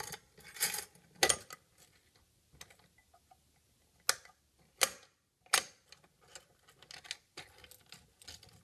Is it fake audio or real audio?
real